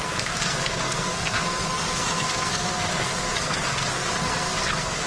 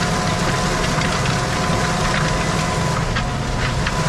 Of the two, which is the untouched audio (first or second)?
second